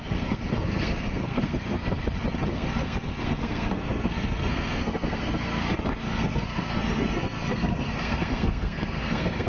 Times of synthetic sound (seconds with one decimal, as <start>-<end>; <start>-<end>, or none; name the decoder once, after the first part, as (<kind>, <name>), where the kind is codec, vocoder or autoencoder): 0.0-2.0 (codec, SNAC); 2.5-9.5